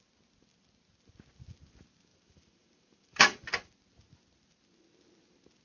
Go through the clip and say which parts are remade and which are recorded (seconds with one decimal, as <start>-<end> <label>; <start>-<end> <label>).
0.0-2.1 recorded; 2.1-3.7 remade; 3.7-5.6 recorded